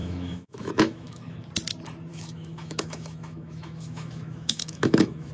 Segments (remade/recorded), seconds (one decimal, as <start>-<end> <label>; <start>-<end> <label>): 0.0-1.5 remade; 1.5-2.1 recorded; 2.1-5.3 remade